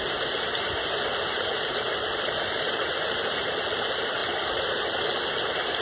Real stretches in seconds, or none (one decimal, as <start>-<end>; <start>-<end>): 0.0-5.8